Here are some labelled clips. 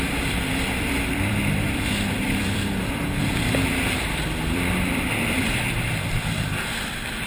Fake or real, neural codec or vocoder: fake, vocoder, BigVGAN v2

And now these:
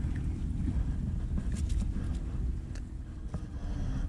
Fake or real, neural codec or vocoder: real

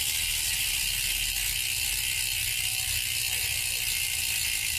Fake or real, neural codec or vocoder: real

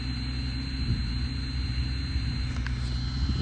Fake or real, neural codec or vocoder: real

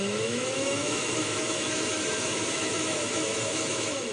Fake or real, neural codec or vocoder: fake, autoencoder, DAC-VAE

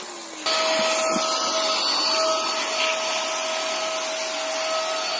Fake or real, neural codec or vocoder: real